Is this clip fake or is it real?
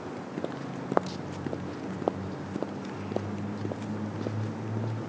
real